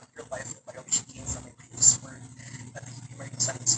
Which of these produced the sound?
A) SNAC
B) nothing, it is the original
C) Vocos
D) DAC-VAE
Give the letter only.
B